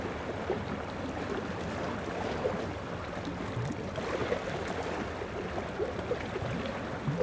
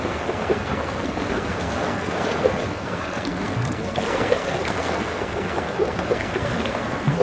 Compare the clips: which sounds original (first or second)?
first